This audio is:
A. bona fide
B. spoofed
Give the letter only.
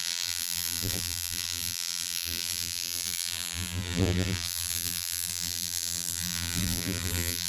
B